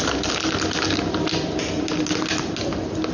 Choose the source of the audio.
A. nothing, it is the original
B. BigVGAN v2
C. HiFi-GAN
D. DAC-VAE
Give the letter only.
A